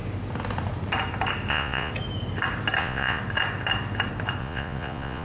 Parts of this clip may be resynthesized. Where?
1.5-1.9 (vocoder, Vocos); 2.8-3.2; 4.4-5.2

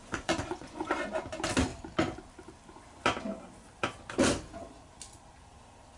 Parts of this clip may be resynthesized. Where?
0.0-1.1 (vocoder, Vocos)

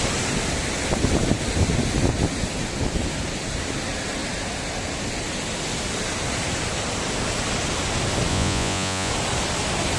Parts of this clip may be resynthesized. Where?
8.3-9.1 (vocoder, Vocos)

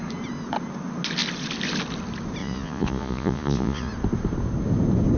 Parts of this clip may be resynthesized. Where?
2.4-3.9 (vocoder, Vocos)

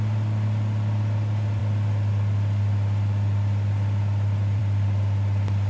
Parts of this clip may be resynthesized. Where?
none

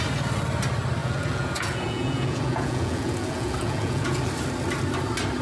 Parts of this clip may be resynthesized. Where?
1.0-4.2 (vocoder, Vocos)